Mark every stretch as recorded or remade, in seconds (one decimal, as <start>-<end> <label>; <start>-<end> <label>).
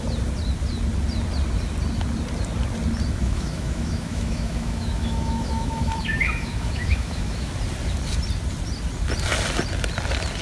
0.0-3.2 recorded; 3.2-7.5 remade; 7.5-10.4 recorded